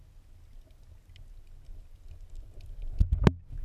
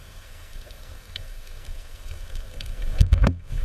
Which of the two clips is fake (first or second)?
second